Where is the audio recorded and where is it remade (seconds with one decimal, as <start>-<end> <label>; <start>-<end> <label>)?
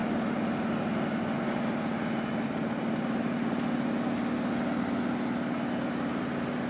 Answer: 0.0-6.7 recorded